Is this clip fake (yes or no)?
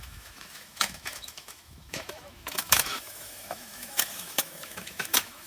yes